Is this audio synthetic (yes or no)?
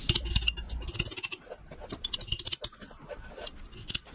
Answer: no